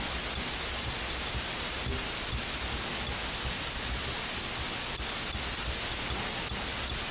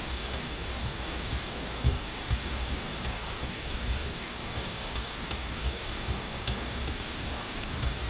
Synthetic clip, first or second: second